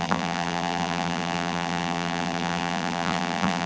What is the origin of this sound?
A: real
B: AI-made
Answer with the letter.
B